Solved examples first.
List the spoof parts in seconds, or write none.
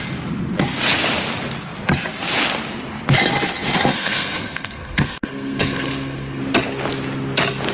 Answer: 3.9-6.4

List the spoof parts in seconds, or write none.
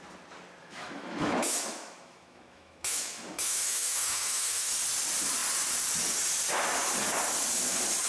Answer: 0.6-4.7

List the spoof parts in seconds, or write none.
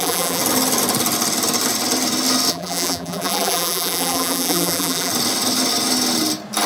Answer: 0.0-0.4; 2.5-5.1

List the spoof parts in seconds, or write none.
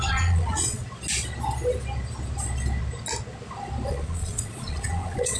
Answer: 0.0-0.8; 3.9-5.4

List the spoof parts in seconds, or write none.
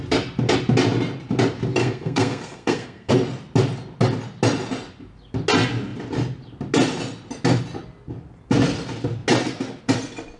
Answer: 1.8-3.1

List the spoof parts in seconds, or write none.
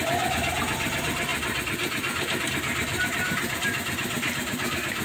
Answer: 2.9-5.0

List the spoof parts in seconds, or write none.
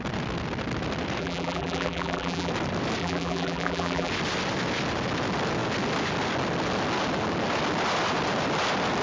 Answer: 1.2-2.5; 3.0-4.1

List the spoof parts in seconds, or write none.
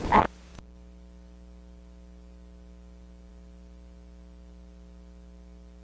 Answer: none